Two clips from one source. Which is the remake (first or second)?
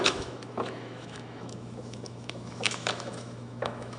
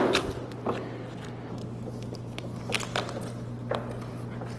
first